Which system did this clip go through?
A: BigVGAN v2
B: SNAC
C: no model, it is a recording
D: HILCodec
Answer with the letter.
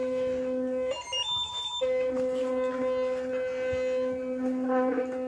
C